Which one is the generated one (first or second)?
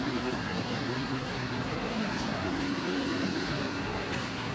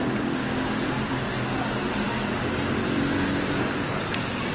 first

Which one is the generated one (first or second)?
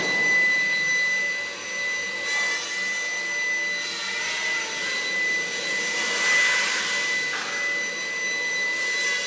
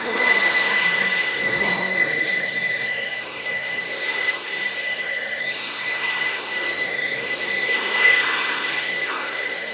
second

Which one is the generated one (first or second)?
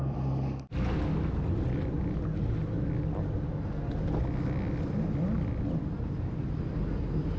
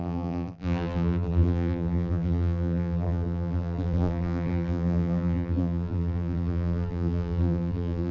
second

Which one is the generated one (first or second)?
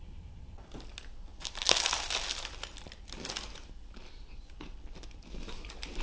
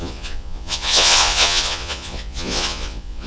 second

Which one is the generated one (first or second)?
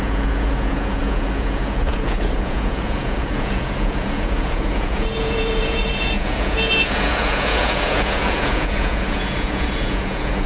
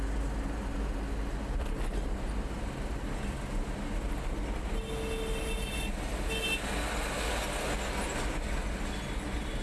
first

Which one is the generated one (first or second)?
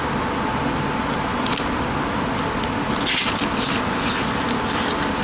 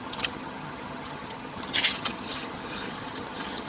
second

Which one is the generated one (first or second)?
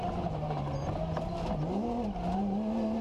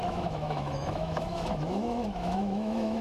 second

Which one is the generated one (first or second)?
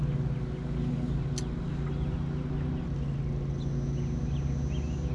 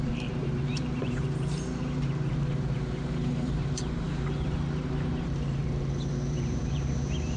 second